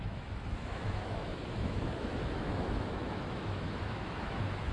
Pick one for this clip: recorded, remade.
remade